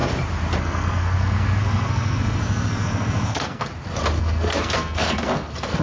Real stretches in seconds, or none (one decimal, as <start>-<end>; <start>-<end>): 0.0-0.6; 3.7-4.2